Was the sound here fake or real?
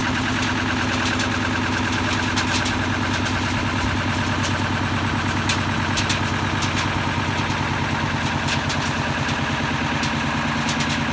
real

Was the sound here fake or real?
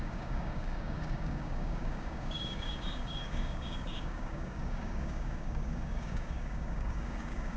fake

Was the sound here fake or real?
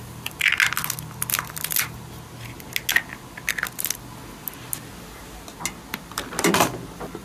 real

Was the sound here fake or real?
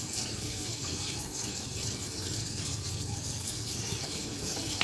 fake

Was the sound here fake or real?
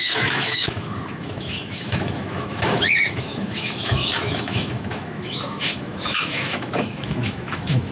fake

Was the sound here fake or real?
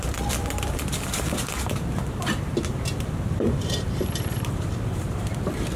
fake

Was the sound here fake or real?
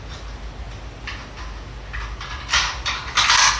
real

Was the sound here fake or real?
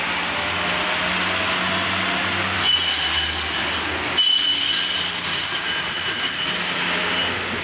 real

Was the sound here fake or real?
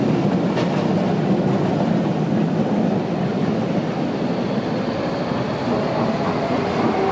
real